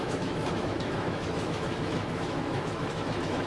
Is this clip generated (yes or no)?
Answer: yes